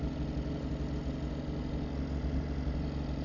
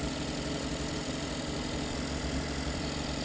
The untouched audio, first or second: first